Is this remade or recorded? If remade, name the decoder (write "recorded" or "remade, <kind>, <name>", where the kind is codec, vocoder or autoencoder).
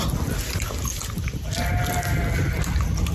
recorded